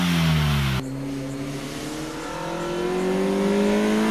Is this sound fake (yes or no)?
no